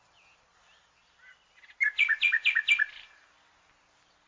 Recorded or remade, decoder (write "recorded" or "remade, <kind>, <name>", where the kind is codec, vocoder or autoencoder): recorded